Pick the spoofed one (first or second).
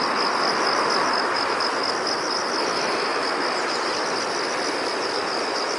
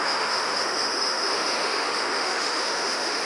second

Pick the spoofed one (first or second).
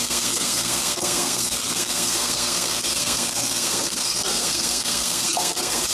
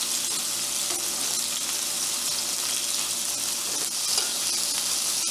first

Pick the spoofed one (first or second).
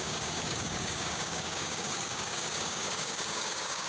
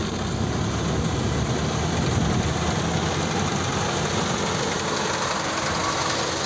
first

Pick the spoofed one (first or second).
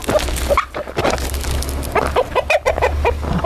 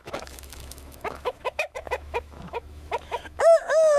second